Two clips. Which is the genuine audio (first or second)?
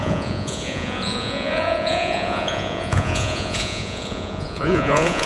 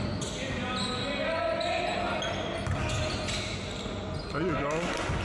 second